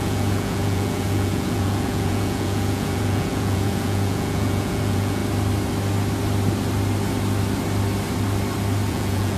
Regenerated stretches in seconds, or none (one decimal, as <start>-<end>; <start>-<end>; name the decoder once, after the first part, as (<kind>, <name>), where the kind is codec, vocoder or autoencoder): 0.0-5.2 (vocoder, Vocos); 8.9-9.4